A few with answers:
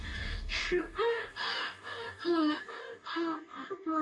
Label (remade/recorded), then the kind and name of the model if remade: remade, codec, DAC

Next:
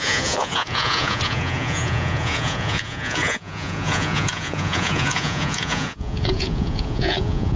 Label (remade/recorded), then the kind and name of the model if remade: remade, vocoder, Vocos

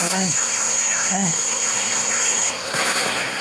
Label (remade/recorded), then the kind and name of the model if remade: remade, codec, SNAC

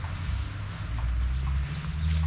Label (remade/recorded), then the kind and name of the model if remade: recorded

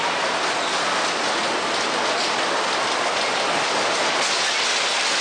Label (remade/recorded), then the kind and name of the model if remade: recorded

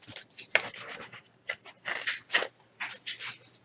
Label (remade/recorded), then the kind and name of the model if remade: recorded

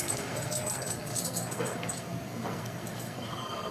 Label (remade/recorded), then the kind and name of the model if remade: remade, codec, SNAC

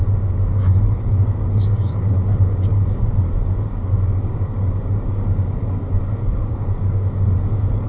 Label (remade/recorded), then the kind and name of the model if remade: remade, codec, DAC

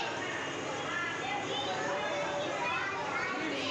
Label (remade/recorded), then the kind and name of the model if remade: recorded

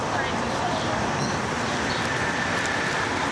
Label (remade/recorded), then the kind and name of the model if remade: recorded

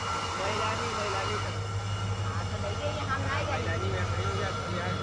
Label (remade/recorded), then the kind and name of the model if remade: recorded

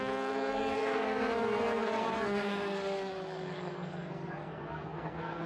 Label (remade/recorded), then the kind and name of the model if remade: remade, codec, SNAC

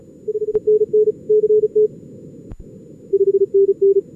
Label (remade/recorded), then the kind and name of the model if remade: recorded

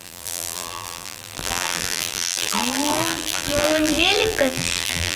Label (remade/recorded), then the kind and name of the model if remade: remade, vocoder, BigVGAN v2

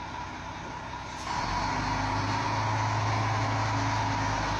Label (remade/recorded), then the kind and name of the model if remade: recorded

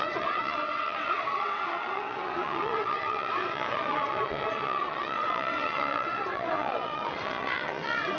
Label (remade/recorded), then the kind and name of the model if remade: remade, vocoder, WaveNeXt